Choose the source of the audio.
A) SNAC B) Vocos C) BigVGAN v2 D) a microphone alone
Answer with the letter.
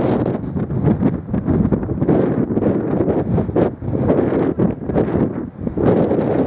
D